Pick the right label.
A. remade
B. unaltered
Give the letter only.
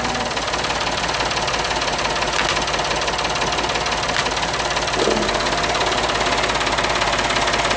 B